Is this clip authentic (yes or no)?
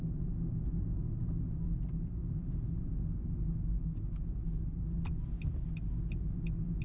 yes